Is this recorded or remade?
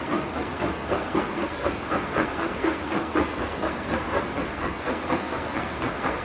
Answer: remade